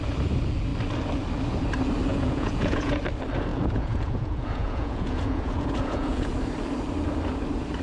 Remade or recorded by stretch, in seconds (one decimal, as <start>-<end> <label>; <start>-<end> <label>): 0.0-2.1 recorded; 2.1-3.0 remade; 3.0-3.5 recorded; 3.5-6.3 remade; 6.3-7.8 recorded